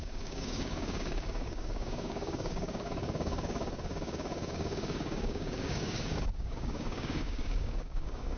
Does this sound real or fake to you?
fake